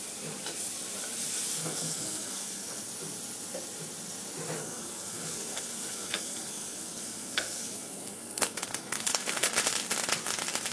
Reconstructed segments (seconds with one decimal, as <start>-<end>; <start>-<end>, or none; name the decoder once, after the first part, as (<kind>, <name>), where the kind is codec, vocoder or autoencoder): 1.6-2.8 (codec, SNAC); 4.6-9.5